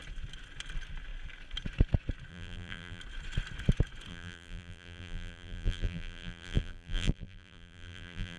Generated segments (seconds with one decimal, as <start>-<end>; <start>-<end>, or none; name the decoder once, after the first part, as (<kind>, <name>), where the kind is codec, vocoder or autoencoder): 2.3-3.0 (vocoder, BigVGAN v2); 4.1-8.4